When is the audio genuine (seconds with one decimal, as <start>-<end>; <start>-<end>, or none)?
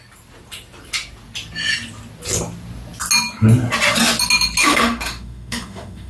0.0-4.6